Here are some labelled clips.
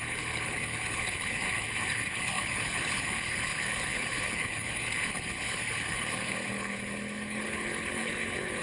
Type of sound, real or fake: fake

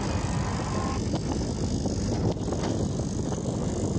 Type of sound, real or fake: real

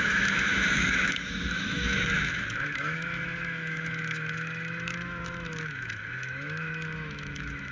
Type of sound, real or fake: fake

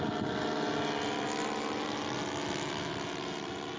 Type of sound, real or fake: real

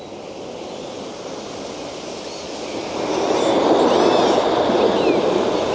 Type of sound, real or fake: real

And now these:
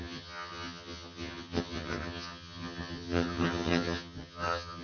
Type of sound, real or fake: fake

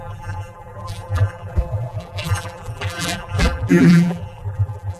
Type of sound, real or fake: fake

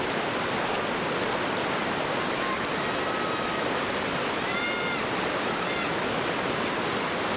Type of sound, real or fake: real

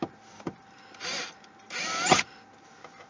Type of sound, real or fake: real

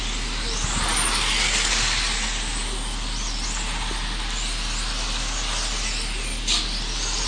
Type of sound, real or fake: real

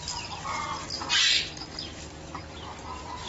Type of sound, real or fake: real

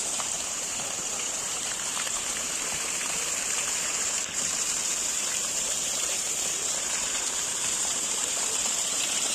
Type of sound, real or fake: fake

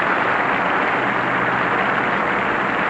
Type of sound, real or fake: real